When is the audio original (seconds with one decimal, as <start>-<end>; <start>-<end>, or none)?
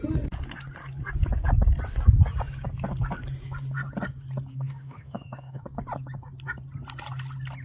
0.0-4.5; 5.6-7.6